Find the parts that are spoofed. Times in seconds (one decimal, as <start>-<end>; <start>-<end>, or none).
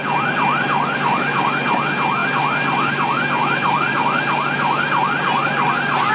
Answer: none